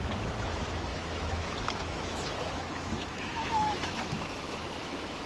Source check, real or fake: fake